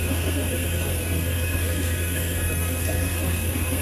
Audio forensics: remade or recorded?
remade